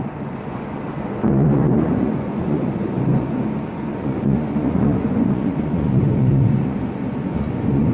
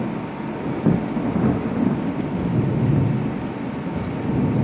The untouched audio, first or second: second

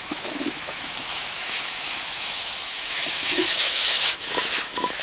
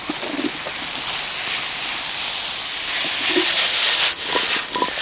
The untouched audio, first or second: second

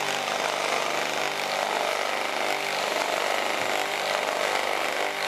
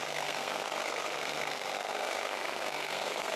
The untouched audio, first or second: first